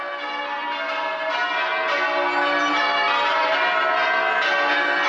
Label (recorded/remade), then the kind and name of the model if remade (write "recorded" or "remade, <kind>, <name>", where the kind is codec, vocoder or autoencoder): recorded